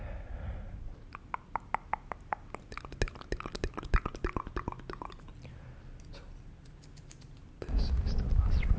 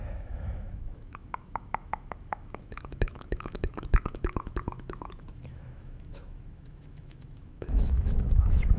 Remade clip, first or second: second